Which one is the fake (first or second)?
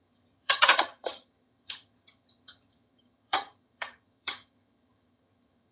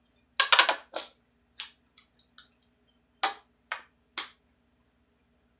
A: first